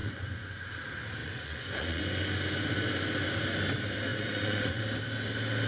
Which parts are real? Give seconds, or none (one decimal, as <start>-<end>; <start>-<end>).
0.7-1.2; 2.0-4.1; 4.8-5.7